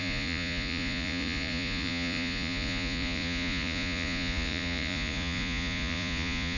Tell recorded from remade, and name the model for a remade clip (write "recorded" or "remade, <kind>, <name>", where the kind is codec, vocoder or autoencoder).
remade, vocoder, Vocos